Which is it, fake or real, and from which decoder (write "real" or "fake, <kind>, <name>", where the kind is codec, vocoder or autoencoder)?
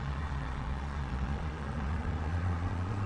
fake, vocoder, Vocos